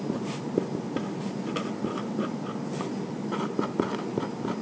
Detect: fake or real real